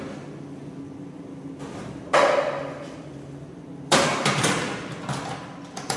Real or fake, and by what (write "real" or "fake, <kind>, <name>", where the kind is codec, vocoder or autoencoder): fake, vocoder, BigVGAN v2